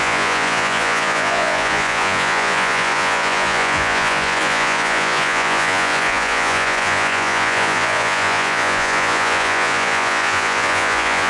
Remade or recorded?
remade